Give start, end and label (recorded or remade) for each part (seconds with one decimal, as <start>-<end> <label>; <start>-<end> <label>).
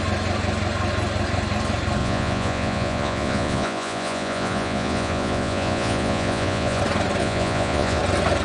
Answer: 0.0-2.0 recorded; 2.0-6.8 remade; 6.8-7.2 recorded; 7.2-8.0 remade; 8.0-8.4 recorded